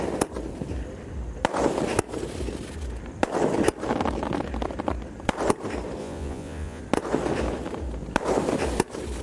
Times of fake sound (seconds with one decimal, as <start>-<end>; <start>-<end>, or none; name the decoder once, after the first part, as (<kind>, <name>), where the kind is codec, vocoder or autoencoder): 6.0-6.8 (vocoder, Vocos)